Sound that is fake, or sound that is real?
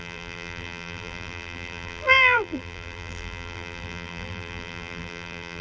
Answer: fake